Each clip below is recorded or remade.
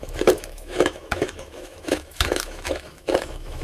remade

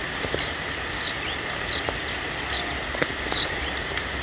recorded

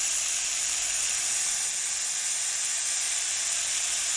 recorded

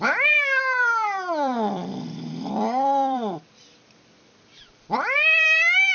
remade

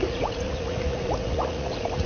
remade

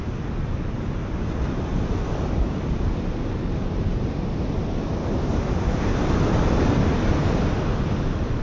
recorded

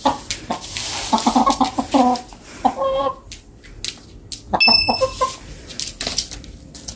recorded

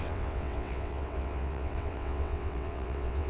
remade